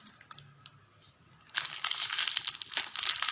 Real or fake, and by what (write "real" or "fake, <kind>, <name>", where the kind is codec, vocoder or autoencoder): real